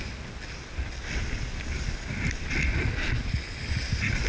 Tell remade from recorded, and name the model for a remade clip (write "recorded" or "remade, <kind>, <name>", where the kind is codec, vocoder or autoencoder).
recorded